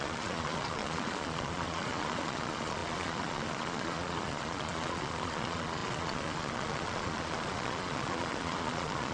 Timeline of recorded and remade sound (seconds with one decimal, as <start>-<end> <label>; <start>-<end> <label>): 0.0-9.1 remade